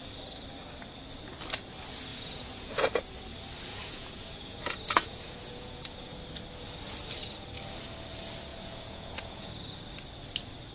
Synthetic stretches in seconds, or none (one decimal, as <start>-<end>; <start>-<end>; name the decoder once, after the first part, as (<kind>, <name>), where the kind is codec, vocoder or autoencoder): 2.1-3.0 (vocoder, Vocos); 3.7-6.2; 8.5-9.5